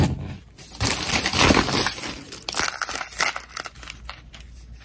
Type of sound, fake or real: real